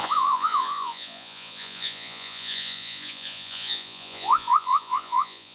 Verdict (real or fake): fake